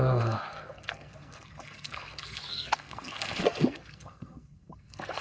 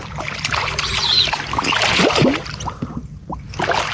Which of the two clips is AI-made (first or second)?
first